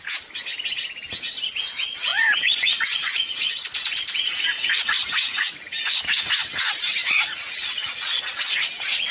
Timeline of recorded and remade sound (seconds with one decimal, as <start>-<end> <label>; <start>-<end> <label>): 0.0-2.1 recorded; 2.1-6.3 remade; 6.3-7.0 recorded; 7.0-8.2 remade; 8.2-9.1 recorded